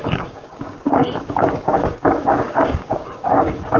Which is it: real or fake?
fake